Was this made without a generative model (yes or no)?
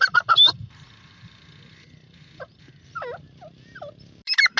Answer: yes